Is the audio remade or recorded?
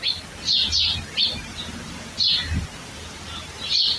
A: recorded